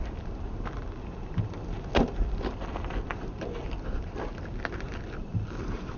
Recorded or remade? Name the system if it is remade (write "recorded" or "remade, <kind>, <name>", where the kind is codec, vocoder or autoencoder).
recorded